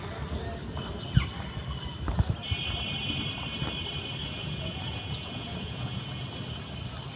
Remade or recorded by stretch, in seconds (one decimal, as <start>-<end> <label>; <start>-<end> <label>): 0.0-4.2 recorded; 4.2-6.2 remade; 6.2-7.2 recorded